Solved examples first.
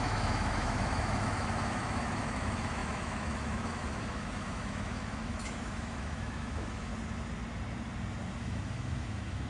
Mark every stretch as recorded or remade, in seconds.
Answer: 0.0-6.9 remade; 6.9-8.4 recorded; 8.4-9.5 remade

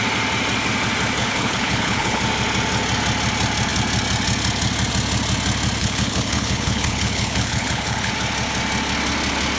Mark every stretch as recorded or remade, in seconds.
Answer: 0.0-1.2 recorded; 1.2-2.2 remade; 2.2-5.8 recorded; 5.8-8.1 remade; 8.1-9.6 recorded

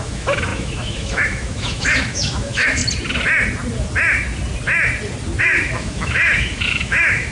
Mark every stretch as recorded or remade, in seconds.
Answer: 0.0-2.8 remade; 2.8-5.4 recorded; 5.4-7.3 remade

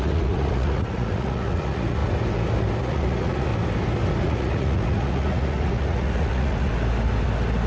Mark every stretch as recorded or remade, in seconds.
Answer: 0.0-2.0 remade; 2.0-2.8 recorded; 2.8-3.5 remade; 3.5-4.2 recorded; 4.2-6.7 remade; 6.7-7.7 recorded